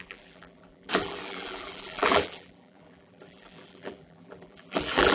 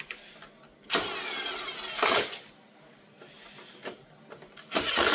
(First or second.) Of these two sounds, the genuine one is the second